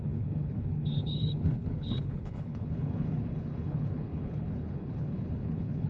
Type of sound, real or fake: fake